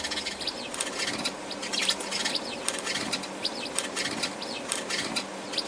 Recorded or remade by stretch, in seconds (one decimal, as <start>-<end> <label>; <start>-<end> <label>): 0.0-5.7 recorded